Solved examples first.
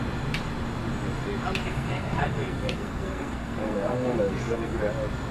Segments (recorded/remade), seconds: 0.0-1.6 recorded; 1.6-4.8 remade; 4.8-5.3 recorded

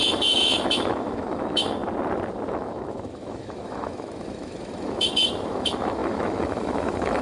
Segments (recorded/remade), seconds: 0.0-1.8 remade; 1.8-2.5 recorded; 2.5-7.2 remade

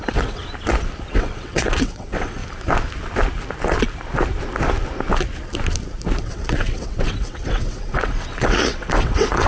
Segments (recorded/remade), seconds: 0.0-0.4 remade; 0.4-1.1 recorded; 1.1-2.4 remade; 2.4-6.2 recorded; 6.2-9.5 remade

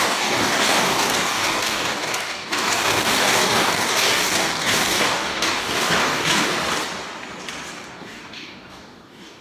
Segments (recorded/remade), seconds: 0.0-6.5 remade; 6.5-7.7 recorded; 7.7-9.4 remade

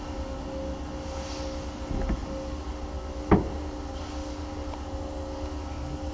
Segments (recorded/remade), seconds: 0.0-6.1 recorded

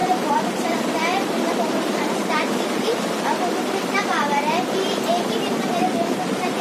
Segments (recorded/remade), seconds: 0.0-6.6 remade